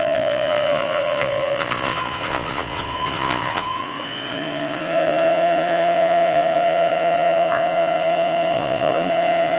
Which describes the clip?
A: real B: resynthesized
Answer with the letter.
B